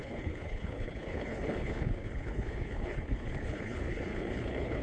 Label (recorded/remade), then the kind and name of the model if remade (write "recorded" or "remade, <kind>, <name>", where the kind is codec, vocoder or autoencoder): remade, codec, HILCodec